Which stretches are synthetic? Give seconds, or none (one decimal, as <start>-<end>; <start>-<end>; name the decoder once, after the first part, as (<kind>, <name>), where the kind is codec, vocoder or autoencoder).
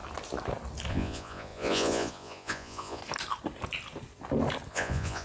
0.9-3.0 (vocoder, Vocos); 4.7-5.2